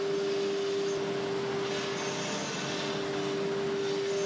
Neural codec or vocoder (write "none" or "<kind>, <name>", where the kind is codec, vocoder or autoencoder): none